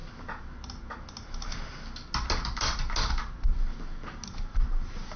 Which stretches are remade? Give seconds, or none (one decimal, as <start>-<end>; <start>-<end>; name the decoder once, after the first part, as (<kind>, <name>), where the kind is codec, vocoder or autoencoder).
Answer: none